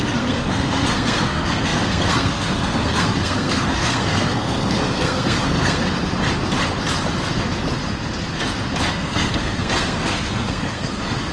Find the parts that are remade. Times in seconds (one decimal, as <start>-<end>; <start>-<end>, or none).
0.0-5.8; 8.9-11.3